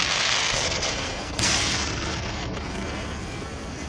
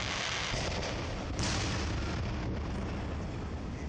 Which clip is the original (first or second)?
second